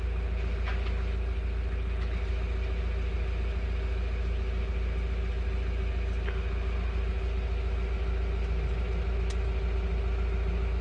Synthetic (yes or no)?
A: no